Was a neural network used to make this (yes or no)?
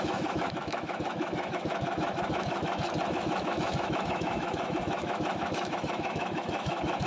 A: yes